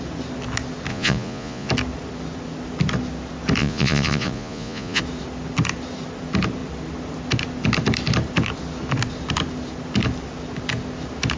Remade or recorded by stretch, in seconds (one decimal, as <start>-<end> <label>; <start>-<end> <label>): 0.0-0.9 recorded; 0.9-1.7 remade; 1.7-3.6 recorded; 3.6-5.0 remade; 5.0-11.4 recorded